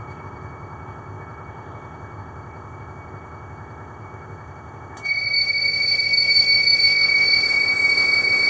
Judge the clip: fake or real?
fake